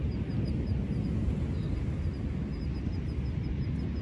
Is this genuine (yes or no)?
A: yes